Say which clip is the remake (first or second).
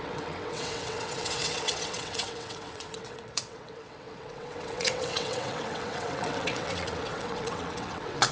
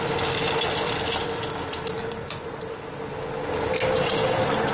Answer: first